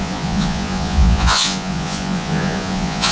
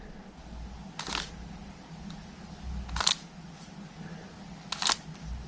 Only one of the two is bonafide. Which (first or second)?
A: second